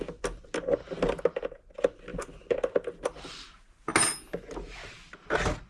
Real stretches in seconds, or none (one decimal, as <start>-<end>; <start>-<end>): 0.0-5.7